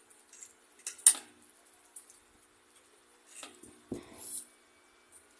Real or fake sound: real